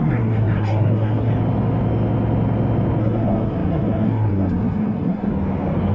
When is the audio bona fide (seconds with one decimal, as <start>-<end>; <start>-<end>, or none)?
1.3-3.0; 5.3-5.9